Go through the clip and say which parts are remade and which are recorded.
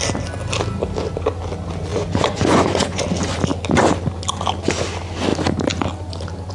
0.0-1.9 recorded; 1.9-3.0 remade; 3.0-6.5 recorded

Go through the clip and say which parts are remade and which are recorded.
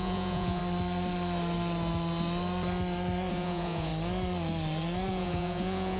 0.0-0.6 remade; 0.6-3.3 recorded; 3.3-3.9 remade; 3.9-5.1 recorded; 5.1-6.0 remade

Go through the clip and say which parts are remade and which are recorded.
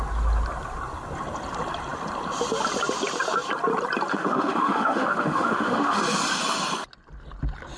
0.0-4.1 recorded; 4.1-6.0 remade; 6.0-7.8 recorded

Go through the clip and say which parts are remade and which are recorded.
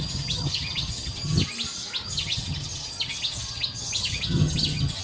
0.0-1.4 remade; 1.4-2.0 recorded; 2.0-5.0 remade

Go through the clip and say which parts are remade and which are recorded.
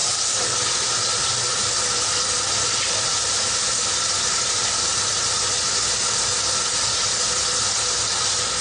0.0-8.6 recorded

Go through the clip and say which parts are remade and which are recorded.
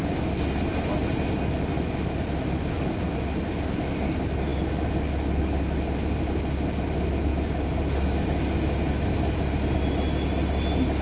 0.0-11.0 recorded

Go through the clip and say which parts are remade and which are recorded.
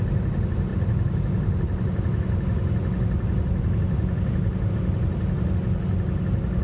0.0-6.6 recorded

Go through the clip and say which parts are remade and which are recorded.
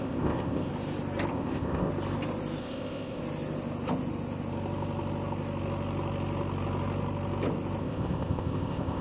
0.0-0.7 remade; 0.7-1.3 recorded; 1.3-1.9 remade; 1.9-2.6 recorded; 2.6-3.2 remade; 3.2-7.8 recorded; 7.8-9.0 remade